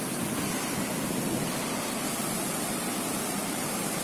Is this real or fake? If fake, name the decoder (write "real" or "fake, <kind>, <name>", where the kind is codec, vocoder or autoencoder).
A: real